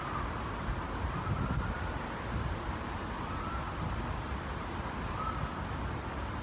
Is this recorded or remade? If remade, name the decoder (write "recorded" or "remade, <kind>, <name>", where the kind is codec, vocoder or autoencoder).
recorded